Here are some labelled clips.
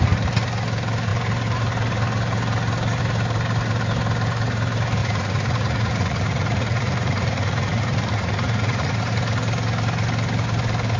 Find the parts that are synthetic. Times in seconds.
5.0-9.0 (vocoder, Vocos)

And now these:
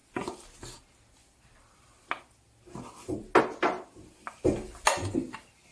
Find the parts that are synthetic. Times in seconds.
none

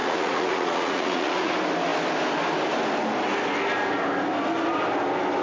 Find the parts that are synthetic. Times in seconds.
0.0-1.5 (vocoder, Vocos)

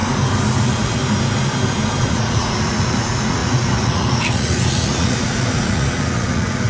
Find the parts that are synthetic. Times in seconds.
0.6-1.0 (vocoder, Vocos); 2.0-6.7

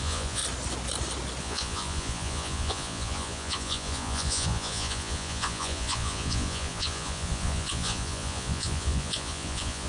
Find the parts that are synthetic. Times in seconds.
0.0-0.4 (vocoder, Vocos); 1.4-9.9

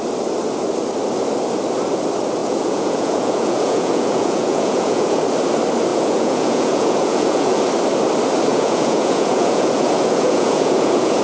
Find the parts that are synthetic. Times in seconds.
2.4-5.2 (vocoder, Vocos); 5.9-7.6; 8.5-11.2

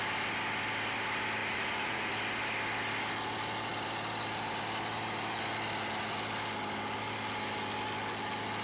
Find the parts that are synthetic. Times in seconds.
1.4-2.1 (vocoder, Vocos)

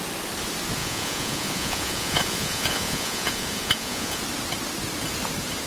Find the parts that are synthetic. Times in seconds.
0.8-4.2 (vocoder, Vocos)